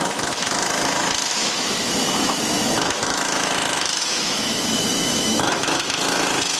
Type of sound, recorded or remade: remade